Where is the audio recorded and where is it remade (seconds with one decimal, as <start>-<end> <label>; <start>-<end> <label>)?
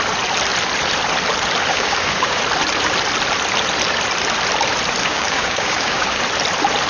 0.0-1.7 recorded; 1.7-2.4 remade; 2.4-5.0 recorded; 5.0-6.2 remade; 6.2-6.9 recorded